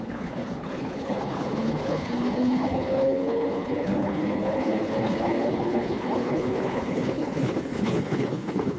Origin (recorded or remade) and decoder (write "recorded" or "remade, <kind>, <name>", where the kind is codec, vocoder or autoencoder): remade, codec, HILCodec